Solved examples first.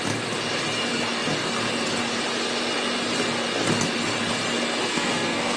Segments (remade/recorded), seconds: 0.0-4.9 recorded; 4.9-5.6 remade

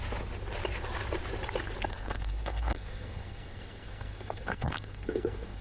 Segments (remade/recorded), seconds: 0.0-1.9 recorded; 1.9-5.6 remade